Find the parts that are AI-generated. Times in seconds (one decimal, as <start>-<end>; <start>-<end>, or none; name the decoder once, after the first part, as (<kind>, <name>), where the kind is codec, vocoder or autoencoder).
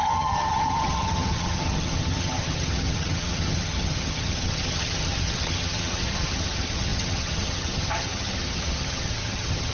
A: 0.0-9.7 (vocoder, HiFi-GAN)